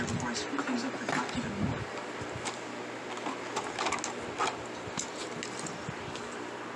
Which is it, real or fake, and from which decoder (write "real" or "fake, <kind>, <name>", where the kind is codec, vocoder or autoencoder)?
real